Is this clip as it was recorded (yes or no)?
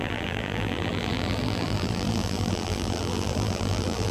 no